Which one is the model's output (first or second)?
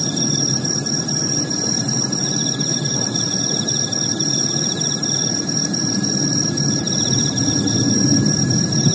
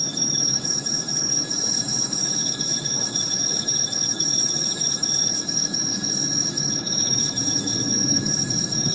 second